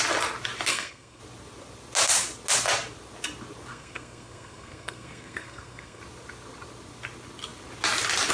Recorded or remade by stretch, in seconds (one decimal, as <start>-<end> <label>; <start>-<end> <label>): 0.0-0.7 recorded; 0.7-1.2 remade; 1.2-3.7 recorded; 3.7-6.0 remade; 6.0-8.3 recorded